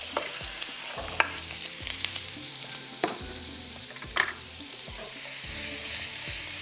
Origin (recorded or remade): remade